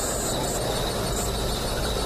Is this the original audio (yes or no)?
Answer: yes